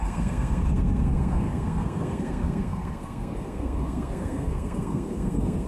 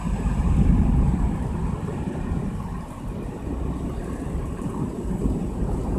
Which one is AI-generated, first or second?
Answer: first